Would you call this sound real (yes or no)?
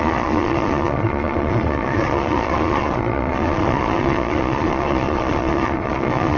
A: no